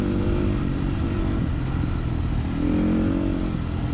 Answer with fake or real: real